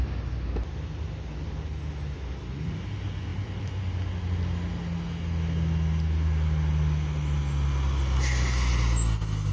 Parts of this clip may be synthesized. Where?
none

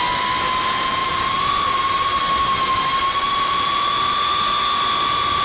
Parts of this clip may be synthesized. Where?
none

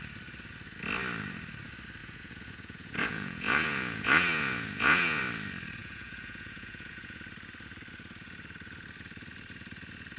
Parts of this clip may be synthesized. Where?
2.0-5.2 (vocoder, Vocos); 5.8-7.2

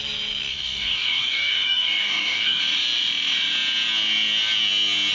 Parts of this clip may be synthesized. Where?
0.5-2.6 (codec, DAC)

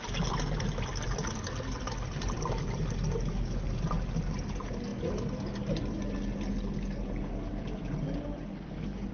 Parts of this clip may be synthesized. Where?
none

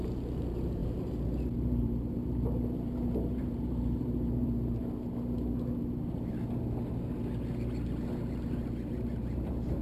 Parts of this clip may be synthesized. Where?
0.0-4.8 (vocoder, BigVGAN v2); 9.1-9.8

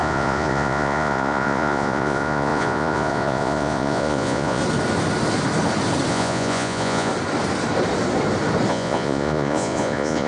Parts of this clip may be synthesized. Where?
0.0-4.6 (vocoder, Vocos); 6.1-7.1; 8.7-10.3